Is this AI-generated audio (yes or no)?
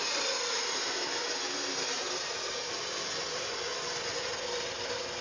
no